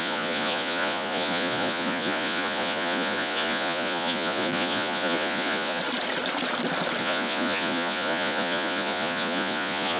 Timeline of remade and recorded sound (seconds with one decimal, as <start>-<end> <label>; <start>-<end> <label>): 0.0-5.8 remade; 5.8-7.0 recorded; 7.0-10.0 remade